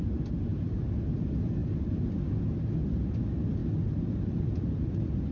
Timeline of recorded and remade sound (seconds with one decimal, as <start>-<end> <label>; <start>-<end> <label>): 0.0-5.3 recorded